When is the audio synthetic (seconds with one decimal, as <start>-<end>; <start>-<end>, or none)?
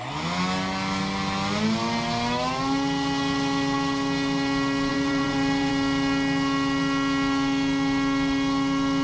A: 4.9-5.7